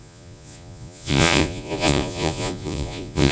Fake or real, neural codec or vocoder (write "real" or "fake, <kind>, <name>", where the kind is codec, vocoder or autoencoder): fake, vocoder, Vocos